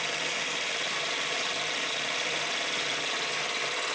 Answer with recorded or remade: remade